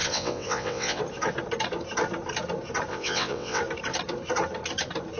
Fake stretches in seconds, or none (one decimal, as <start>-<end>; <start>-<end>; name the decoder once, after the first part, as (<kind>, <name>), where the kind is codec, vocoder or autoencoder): 0.0-1.0 (vocoder, WaveNeXt); 2.9-3.6